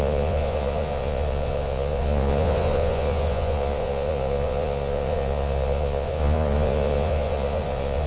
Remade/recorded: remade